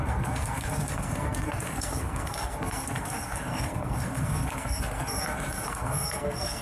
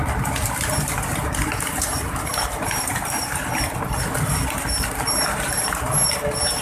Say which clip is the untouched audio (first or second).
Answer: second